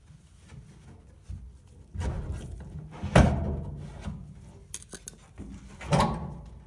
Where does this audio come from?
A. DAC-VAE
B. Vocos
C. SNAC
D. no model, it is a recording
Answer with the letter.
D